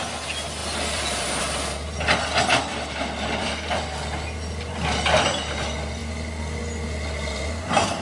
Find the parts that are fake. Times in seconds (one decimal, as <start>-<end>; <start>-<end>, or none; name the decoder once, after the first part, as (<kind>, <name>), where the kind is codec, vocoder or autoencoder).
0.6-1.4 (vocoder, BigVGAN v2); 2.7-3.8; 6.0-6.6